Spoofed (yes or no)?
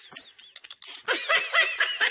no